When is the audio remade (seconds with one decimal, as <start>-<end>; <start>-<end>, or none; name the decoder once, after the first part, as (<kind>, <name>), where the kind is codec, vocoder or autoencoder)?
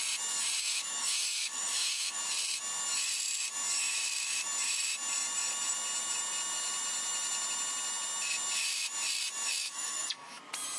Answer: 0.6-2.2 (autoencoder, DAC-VAE); 9.6-10.4